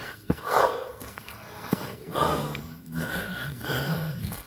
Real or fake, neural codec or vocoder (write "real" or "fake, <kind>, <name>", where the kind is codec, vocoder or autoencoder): fake, codec, SNAC